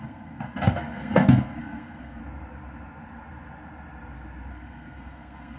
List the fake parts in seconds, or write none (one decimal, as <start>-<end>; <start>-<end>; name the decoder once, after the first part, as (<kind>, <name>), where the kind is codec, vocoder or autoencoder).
0.0-2.2 (codec, SNAC); 4.5-5.6